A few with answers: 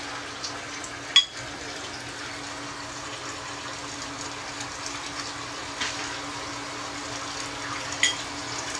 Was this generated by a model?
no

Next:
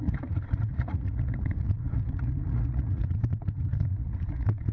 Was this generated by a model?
yes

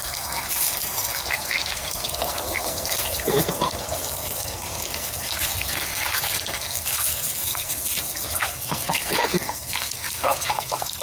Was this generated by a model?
yes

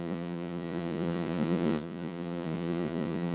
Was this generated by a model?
yes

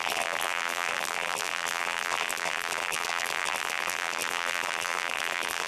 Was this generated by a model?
yes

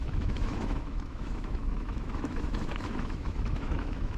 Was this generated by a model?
yes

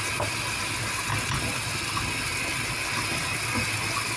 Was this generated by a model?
no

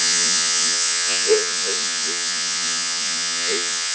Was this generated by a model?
yes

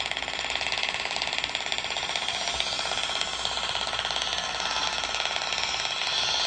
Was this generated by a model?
no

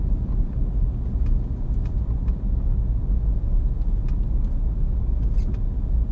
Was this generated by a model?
no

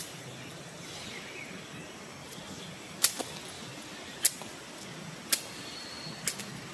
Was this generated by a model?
no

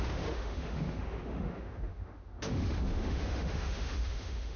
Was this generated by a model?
yes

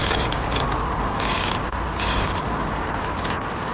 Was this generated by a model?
no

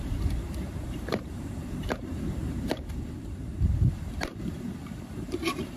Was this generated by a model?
yes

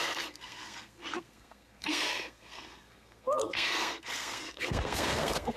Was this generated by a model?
yes